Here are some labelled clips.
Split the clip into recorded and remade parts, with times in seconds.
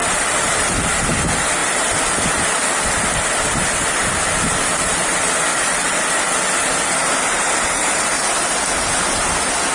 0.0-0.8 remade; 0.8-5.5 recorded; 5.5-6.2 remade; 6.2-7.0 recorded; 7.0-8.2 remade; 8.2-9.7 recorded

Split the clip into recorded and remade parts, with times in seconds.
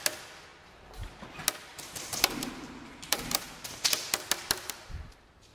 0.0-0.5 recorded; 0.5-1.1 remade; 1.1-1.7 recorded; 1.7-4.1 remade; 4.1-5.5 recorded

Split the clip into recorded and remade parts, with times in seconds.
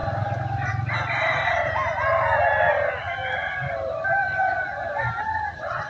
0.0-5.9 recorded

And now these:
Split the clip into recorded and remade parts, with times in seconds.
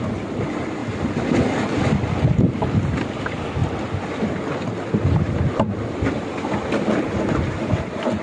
0.0-8.2 recorded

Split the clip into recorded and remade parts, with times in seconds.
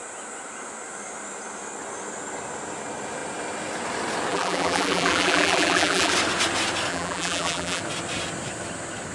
0.0-4.3 recorded; 4.3-6.1 remade; 6.1-6.9 recorded; 6.9-7.8 remade; 7.8-9.1 recorded